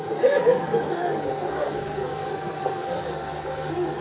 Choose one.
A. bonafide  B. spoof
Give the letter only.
B